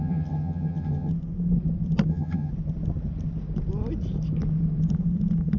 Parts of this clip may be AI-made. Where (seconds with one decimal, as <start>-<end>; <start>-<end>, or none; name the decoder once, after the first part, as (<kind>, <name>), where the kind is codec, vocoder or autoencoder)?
0.0-1.1 (vocoder, HiFi-GAN); 2.1-2.5